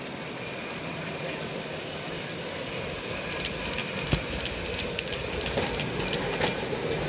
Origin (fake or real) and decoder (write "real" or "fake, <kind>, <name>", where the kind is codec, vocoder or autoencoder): real